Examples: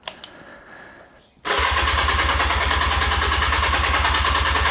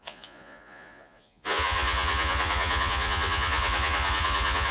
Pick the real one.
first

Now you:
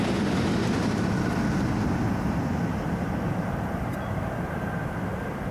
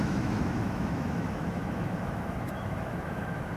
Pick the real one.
first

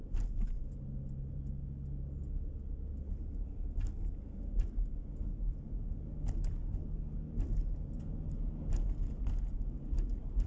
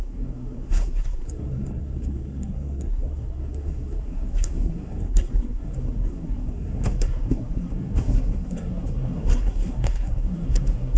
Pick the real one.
first